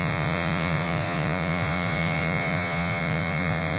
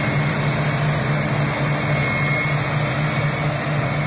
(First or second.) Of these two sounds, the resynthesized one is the first